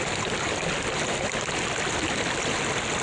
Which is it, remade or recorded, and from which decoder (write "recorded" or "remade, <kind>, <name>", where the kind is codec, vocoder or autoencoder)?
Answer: recorded